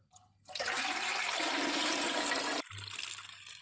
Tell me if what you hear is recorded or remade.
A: recorded